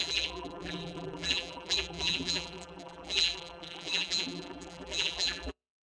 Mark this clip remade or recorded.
remade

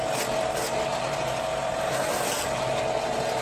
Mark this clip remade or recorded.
recorded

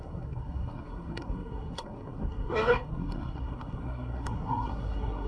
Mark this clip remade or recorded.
remade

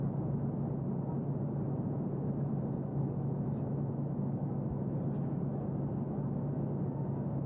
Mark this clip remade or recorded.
recorded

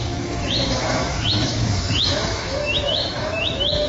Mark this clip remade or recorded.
remade